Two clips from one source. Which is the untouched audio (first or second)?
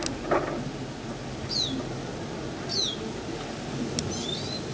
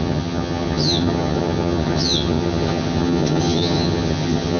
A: first